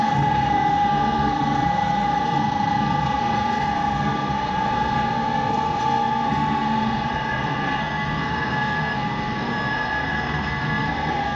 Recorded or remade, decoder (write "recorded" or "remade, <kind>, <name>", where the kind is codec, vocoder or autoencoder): remade, codec, SNAC